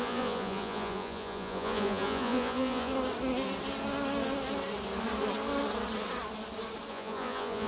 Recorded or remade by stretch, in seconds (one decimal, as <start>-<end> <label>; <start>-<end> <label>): 0.0-2.9 remade; 2.9-6.9 recorded; 6.9-7.7 remade